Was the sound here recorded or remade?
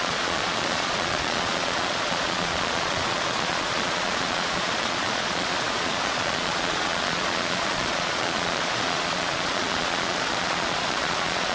remade